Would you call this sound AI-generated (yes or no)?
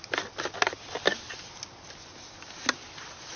no